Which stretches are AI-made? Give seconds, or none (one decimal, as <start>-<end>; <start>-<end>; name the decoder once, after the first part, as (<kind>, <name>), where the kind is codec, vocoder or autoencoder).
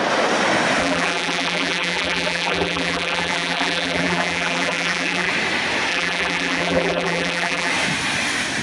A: 0.8-5.3 (vocoder, BigVGAN v2); 5.9-7.7